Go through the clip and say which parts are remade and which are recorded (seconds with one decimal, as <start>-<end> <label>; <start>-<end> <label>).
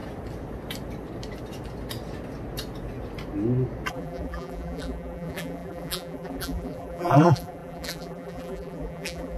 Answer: 0.0-3.9 recorded; 3.9-9.4 remade